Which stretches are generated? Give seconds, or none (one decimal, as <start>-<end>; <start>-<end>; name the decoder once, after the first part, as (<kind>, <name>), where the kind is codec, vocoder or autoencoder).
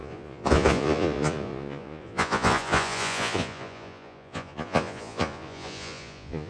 0.0-6.5 (vocoder, Vocos)